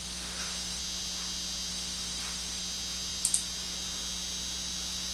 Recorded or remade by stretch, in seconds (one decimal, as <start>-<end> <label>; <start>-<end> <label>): 0.0-0.8 remade; 0.8-1.7 recorded; 1.7-2.6 remade; 2.6-5.1 recorded